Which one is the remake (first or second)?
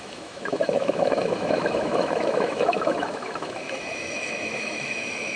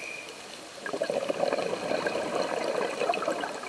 first